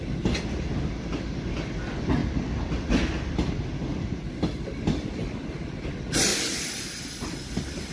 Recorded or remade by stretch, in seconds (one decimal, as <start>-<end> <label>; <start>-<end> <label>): 0.0-7.9 recorded